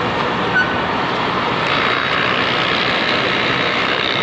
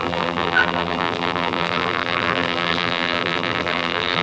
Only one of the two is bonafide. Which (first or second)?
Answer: first